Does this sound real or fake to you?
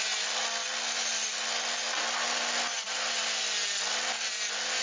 real